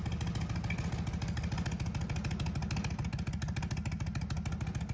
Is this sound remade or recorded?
recorded